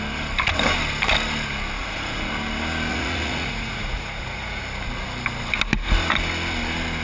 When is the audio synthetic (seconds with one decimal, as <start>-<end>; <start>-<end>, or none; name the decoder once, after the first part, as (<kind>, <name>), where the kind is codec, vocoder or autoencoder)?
1.8-2.3 (vocoder, Vocos); 2.9-4.6